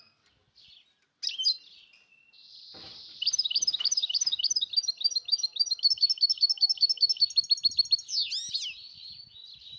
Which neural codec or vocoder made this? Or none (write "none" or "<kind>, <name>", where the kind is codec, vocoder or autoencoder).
none